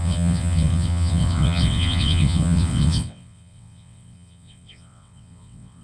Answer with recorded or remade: remade